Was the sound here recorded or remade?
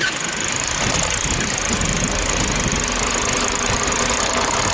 recorded